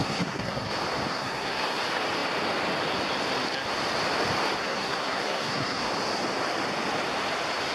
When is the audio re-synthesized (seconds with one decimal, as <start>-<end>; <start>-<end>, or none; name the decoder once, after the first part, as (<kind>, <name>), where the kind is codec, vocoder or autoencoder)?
0.0-0.7 (codec, SNAC); 1.1-1.8; 4.6-5.9